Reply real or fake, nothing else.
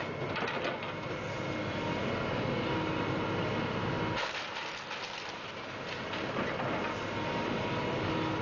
real